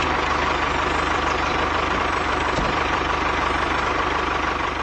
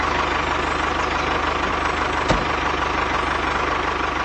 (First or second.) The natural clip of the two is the second